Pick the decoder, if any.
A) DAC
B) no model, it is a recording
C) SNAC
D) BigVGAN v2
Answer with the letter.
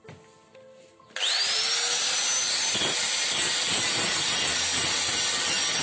B